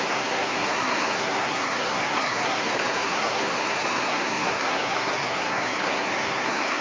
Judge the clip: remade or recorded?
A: remade